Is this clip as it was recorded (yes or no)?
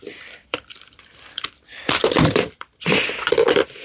no